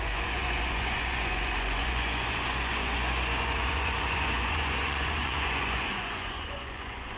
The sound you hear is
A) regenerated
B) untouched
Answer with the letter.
A